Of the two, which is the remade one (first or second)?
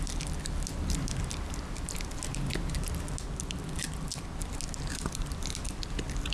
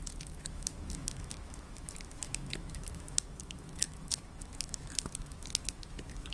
second